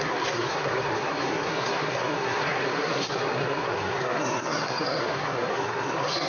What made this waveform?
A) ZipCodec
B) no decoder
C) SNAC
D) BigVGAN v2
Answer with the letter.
C